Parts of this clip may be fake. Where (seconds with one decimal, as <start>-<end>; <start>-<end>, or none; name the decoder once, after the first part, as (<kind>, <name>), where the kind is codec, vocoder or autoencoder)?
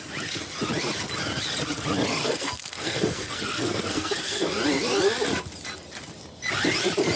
2.2-4.5 (codec, SNAC)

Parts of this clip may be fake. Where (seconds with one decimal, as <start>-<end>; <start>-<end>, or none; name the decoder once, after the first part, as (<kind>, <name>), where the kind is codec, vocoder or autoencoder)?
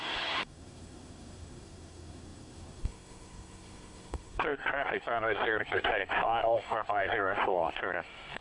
0.0-8.4 (codec, SNAC)